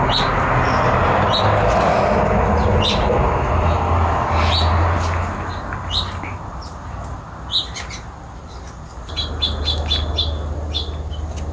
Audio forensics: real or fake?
real